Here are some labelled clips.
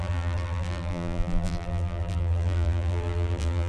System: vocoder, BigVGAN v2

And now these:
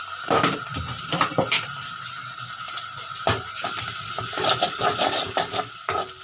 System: none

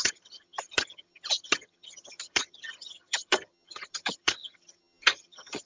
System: vocoder, HiFi-GAN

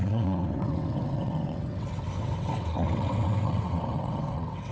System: vocoder, WaveNeXt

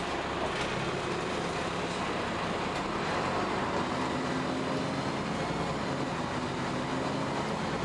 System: none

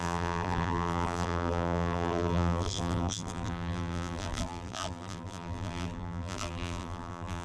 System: vocoder, BigVGAN v2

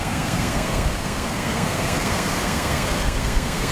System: codec, SNAC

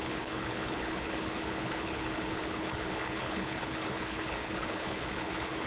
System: codec, HILCodec